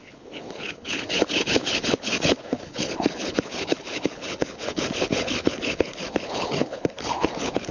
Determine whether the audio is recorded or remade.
remade